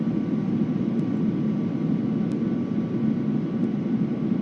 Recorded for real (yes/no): yes